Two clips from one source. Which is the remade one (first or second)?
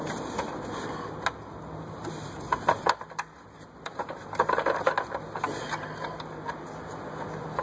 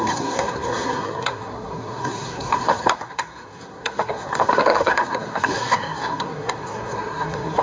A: second